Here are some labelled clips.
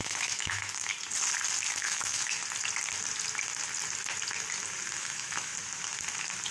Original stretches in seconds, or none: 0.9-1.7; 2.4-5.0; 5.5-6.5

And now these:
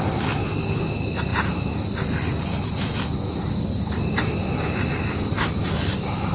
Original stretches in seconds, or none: 0.0-6.3

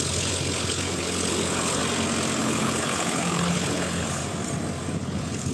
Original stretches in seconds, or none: 1.8-2.4; 4.2-5.0

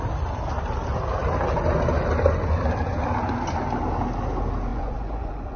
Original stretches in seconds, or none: 0.0-4.7

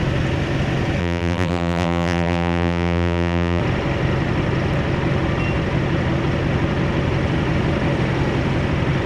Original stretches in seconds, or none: 0.0-1.0; 3.6-9.1

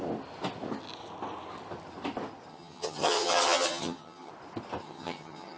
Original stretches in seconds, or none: 0.0-2.5; 4.3-4.8